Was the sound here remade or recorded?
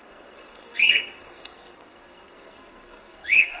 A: remade